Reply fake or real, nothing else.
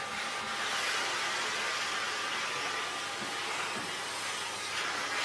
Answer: real